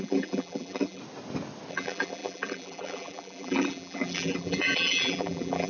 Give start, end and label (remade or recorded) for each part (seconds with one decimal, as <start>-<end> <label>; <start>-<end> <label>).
0.0-1.0 remade; 1.0-1.7 recorded; 1.7-5.7 remade